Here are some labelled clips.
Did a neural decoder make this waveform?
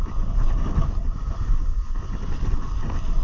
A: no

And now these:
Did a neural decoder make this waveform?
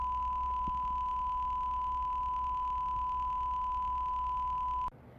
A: no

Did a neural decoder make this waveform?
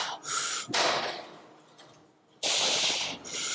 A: no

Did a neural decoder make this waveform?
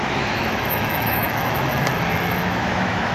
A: yes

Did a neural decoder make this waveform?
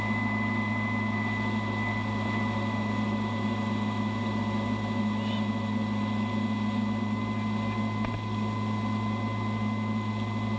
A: no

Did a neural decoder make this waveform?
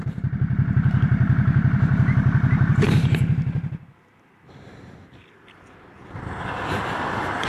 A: no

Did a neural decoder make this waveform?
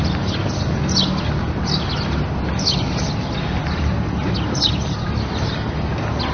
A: no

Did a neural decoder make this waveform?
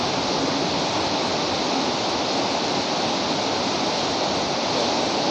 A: no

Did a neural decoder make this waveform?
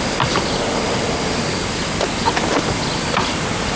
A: no